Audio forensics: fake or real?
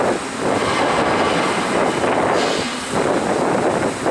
real